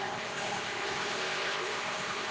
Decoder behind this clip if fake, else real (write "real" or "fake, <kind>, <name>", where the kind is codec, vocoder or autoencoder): fake, codec, ZipCodec